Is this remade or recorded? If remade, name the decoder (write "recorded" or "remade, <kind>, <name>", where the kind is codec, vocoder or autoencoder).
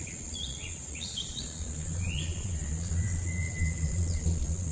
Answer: remade, vocoder, Vocos